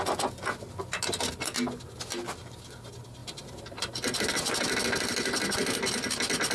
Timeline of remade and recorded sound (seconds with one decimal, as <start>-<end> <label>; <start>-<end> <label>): 0.0-6.5 recorded